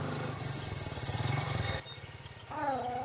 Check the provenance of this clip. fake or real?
fake